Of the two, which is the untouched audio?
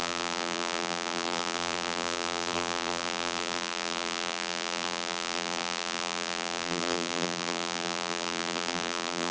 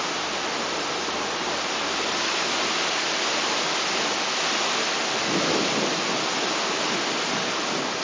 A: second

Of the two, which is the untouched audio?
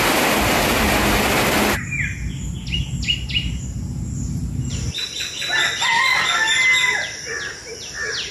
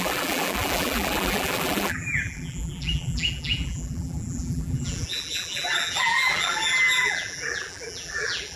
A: first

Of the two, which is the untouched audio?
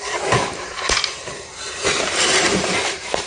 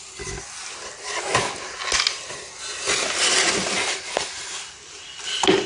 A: second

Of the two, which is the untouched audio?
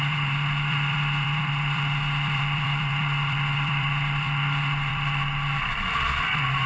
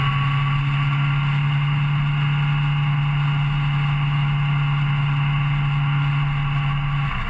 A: second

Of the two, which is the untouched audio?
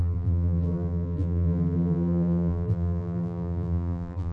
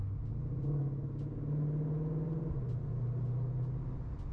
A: second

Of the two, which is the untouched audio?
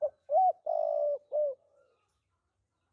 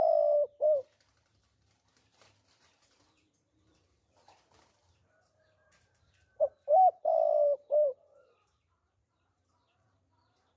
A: first